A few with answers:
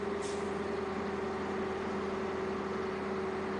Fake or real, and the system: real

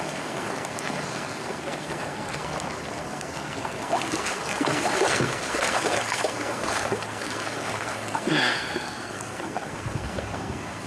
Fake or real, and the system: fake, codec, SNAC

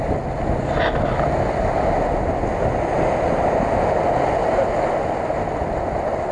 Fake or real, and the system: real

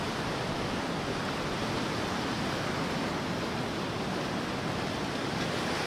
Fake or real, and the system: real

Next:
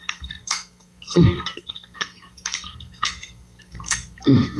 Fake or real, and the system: fake, codec, SNAC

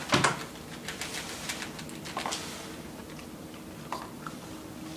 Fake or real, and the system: real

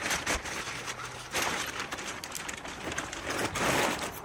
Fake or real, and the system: real